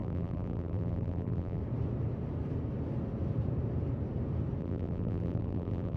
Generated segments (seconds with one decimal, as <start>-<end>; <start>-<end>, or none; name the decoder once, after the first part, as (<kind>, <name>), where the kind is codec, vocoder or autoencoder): 0.0-1.6 (vocoder, BigVGAN v2); 4.6-6.0